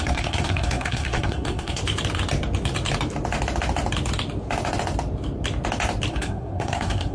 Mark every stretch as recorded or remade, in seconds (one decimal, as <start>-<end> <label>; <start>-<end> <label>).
0.0-1.8 remade; 1.8-6.1 recorded; 6.1-7.1 remade